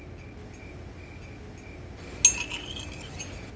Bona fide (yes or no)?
yes